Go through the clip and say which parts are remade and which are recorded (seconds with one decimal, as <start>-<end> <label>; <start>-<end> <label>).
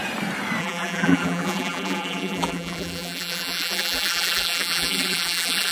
0.0-0.6 recorded; 0.6-5.7 remade